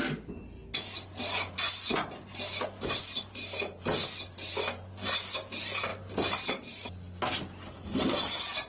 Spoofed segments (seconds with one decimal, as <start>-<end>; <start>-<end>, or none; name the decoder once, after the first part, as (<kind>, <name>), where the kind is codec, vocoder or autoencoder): none